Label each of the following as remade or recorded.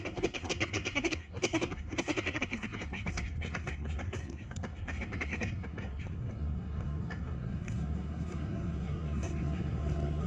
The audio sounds remade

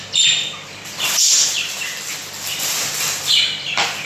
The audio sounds remade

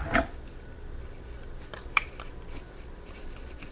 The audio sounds recorded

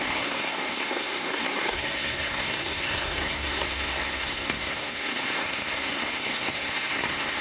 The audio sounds remade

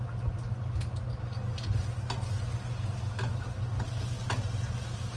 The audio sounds recorded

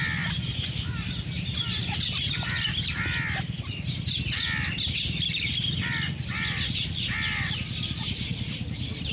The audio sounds recorded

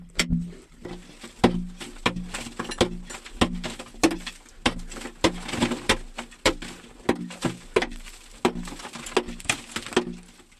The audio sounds recorded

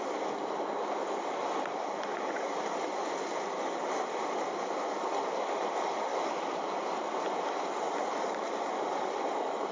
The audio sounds recorded